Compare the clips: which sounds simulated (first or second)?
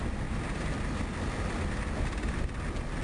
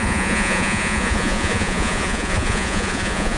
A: second